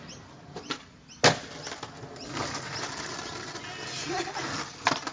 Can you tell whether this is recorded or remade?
recorded